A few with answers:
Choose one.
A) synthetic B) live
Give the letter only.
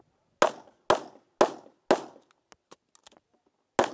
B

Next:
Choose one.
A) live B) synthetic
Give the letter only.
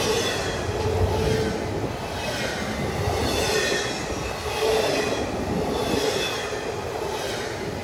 A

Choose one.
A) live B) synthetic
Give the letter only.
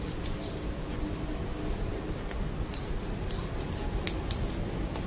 A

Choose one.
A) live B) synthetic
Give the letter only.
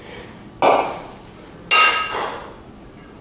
A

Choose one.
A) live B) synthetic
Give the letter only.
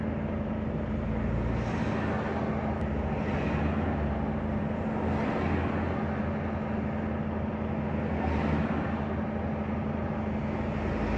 A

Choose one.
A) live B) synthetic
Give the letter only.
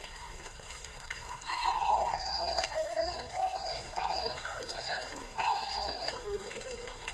B